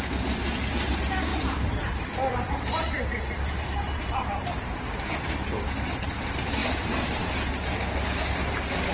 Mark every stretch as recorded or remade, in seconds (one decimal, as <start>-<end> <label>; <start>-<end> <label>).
0.0-1.3 recorded; 1.3-6.1 remade; 6.1-6.6 recorded; 6.6-7.3 remade; 7.3-8.9 recorded